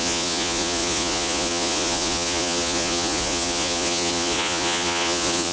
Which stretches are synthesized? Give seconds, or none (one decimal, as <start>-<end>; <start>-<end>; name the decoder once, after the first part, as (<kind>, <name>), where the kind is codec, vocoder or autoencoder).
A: 0.0-5.5 (vocoder, Vocos)